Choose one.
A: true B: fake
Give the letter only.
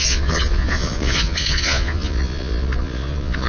B